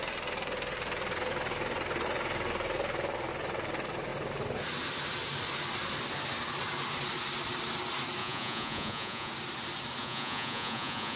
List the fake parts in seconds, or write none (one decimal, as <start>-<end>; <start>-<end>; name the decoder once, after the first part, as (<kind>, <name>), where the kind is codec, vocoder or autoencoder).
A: 8.2-9.3 (vocoder, Vocos); 10.0-11.2